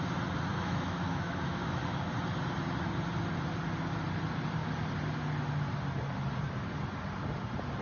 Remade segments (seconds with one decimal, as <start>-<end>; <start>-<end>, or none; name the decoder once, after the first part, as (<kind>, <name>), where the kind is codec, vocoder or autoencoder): 0.5-1.8 (autoencoder, DAC-VAE)